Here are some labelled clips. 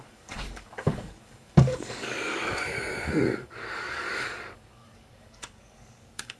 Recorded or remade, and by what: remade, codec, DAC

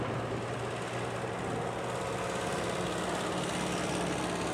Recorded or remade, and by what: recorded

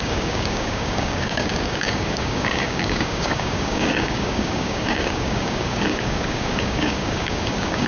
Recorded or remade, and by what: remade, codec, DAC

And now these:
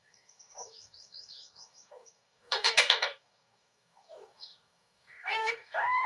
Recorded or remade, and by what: remade, codec, DAC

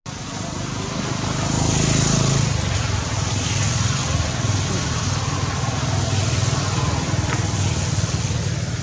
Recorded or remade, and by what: recorded